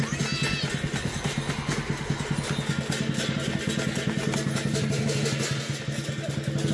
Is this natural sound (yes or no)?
yes